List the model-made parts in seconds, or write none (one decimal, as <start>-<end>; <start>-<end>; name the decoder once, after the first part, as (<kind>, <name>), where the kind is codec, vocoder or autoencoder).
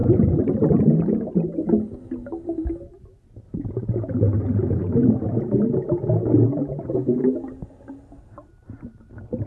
0.0-1.3 (vocoder, BigVGAN v2)